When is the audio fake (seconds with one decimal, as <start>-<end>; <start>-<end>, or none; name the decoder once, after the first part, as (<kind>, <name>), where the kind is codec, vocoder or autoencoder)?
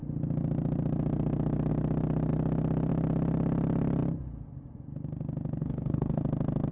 5.6-6.2 (codec, SNAC)